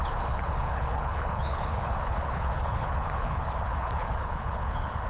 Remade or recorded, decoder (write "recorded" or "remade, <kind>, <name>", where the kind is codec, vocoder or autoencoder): remade, codec, HILCodec